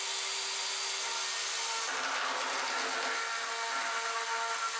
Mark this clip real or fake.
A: real